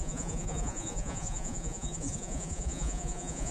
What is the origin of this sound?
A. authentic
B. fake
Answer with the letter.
B